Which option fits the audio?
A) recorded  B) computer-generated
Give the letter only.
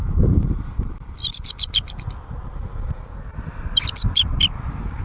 A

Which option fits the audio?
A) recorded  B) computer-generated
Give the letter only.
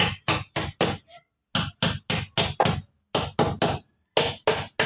A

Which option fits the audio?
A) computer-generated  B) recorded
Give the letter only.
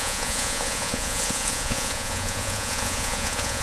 A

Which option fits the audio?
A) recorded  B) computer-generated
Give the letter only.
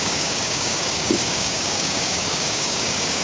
B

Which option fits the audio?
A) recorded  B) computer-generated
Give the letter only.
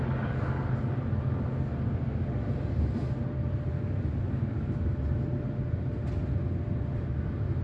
A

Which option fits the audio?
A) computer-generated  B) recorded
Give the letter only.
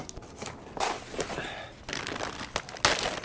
B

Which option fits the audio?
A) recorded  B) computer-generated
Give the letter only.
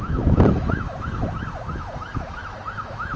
B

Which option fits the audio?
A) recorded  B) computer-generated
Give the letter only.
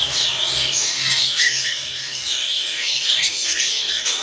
B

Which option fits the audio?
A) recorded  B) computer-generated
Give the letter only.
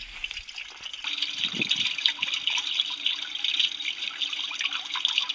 A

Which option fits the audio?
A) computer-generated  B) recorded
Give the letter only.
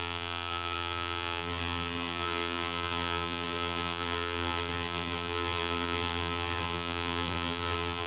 A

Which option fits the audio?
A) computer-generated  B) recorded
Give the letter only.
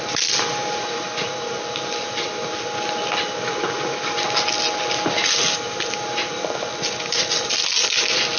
B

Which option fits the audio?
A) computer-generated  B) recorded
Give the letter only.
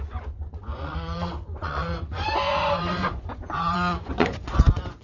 A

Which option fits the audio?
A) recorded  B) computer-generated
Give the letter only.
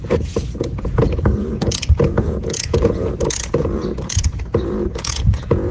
B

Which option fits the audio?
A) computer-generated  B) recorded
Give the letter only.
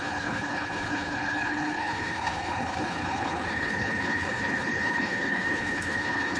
A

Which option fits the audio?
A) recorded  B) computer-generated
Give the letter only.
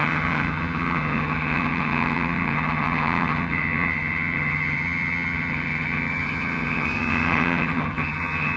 B